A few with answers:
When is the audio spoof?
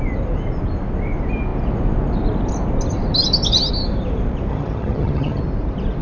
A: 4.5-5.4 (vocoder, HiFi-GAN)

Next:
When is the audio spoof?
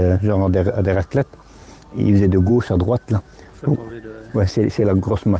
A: 0.0-1.6 (autoencoder, DAC-VAE); 2.5-3.3; 3.9-4.8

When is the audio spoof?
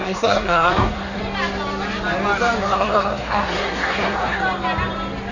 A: 0.0-1.2 (codec, SNAC); 2.6-4.4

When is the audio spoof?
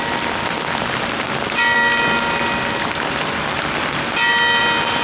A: none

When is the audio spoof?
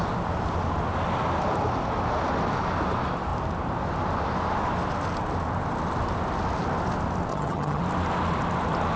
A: 7.3-7.8 (vocoder, HiFi-GAN)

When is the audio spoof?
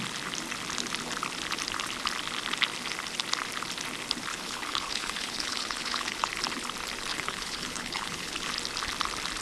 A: 4.3-6.3 (codec, HILCodec); 7.1-8.5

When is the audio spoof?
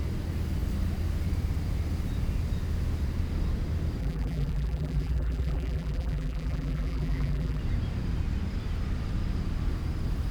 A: 4.0-7.6 (vocoder, BigVGAN v2)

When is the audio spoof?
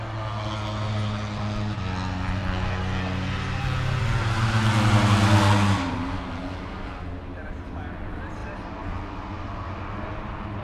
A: none